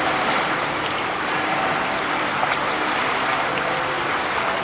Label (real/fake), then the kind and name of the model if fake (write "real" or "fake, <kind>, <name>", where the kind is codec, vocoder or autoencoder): fake, vocoder, BigVGAN v2